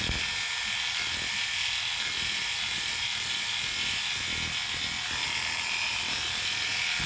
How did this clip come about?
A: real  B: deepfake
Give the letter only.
A